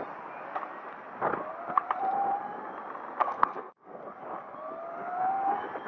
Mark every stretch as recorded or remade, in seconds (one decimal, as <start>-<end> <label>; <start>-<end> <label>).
0.0-3.2 recorded; 3.2-4.0 remade; 4.0-5.9 recorded